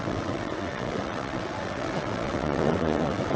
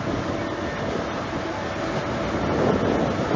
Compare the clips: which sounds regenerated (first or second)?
first